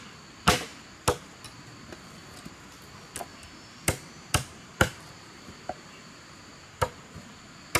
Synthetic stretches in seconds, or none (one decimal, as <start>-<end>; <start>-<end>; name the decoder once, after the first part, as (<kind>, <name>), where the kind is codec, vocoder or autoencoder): 3.3-6.4 (vocoder, BigVGAN v2)